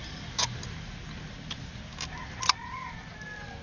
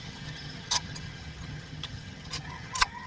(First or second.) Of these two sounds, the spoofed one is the second